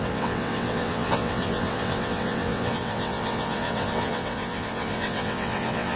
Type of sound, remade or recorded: remade